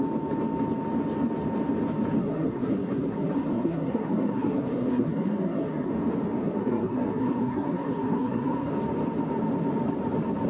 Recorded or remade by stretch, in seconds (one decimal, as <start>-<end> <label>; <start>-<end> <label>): 0.0-2.2 recorded; 2.2-5.9 remade; 5.9-6.4 recorded; 6.4-8.7 remade; 8.7-10.5 recorded